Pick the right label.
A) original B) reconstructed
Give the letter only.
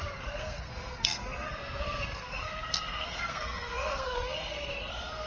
B